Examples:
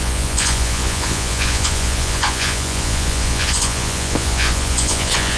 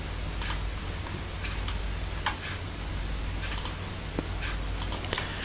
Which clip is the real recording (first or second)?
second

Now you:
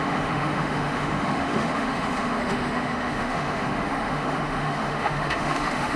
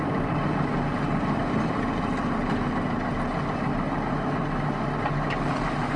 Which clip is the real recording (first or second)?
second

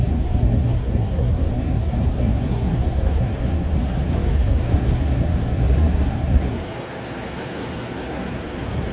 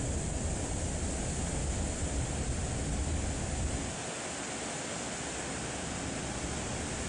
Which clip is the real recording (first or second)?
second